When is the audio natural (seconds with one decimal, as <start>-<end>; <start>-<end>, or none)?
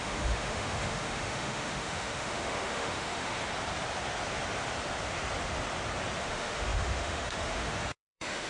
3.4-6.2